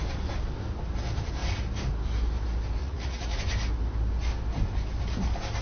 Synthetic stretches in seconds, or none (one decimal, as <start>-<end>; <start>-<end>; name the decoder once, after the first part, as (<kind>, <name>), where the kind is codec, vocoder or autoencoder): 2.8-3.4 (vocoder, Vocos)